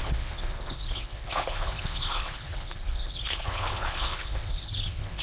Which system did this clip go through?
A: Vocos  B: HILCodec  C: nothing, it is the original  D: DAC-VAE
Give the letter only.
B